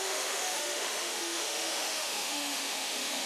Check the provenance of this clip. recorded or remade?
remade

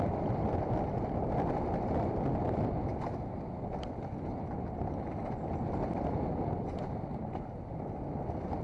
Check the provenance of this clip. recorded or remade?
recorded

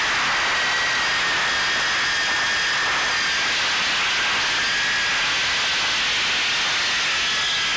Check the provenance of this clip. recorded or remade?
recorded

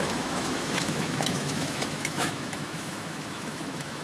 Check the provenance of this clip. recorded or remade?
remade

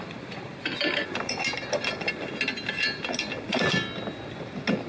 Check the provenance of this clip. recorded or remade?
recorded